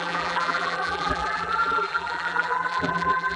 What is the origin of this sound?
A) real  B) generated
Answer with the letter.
B